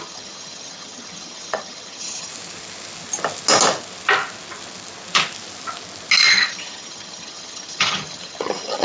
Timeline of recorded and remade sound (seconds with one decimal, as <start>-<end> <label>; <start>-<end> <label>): 0.0-2.3 remade; 2.3-6.3 recorded; 6.3-8.8 remade